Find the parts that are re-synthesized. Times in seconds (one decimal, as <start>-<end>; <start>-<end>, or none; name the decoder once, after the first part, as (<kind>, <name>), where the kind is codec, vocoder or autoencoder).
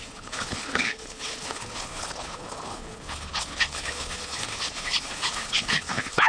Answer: 0.0-6.3 (codec, HILCodec)